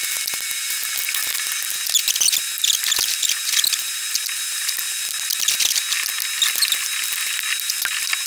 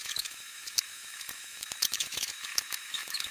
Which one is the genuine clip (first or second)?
first